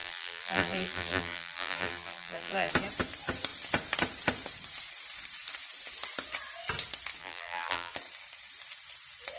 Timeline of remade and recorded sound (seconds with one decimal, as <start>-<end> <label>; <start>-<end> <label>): 0.0-2.7 remade; 2.7-7.2 recorded; 7.2-7.9 remade; 7.9-9.4 recorded